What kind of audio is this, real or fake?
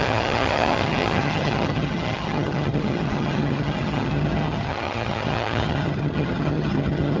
fake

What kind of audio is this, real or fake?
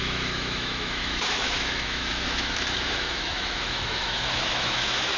fake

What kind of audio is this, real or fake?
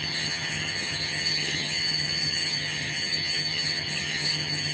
fake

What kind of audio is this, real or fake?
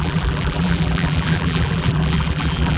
fake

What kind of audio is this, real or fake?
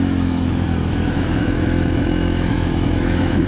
fake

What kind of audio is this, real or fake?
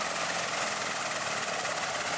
real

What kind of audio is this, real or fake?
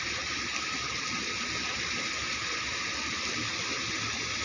real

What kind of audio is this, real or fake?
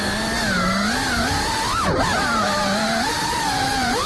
real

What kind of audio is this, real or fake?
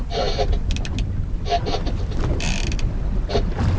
real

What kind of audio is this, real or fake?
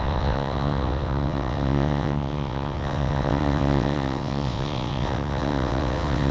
fake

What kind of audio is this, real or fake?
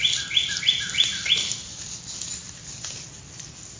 real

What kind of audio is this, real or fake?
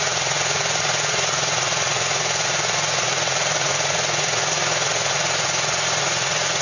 fake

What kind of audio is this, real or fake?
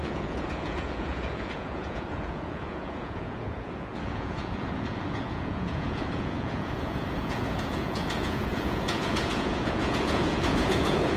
fake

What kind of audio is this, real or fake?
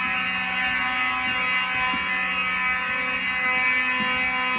real